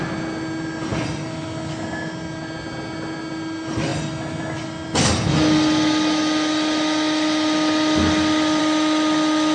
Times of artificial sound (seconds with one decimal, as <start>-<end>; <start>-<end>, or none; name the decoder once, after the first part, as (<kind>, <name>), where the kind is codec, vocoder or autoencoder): none